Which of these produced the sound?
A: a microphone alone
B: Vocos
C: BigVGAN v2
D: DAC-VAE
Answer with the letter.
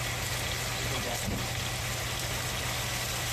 A